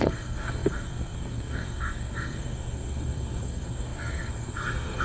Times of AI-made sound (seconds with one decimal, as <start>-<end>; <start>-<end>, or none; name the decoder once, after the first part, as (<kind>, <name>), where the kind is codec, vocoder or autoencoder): 0.0-5.0 (codec, SNAC)